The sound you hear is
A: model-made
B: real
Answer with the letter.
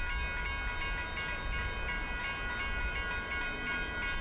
B